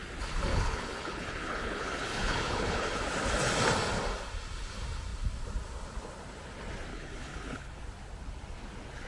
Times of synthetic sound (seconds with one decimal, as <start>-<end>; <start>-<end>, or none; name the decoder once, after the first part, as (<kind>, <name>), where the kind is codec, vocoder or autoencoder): 0.5-3.0 (codec, HILCodec); 6.9-7.8